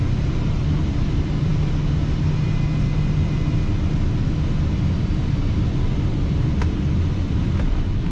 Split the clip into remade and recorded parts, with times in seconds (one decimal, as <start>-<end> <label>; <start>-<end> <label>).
0.0-8.1 recorded